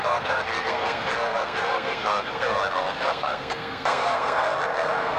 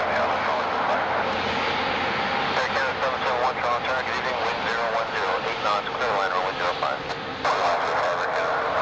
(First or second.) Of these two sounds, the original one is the second